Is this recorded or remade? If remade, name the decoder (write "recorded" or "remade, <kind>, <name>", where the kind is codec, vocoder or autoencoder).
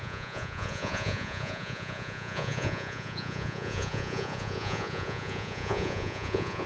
remade, vocoder, Vocos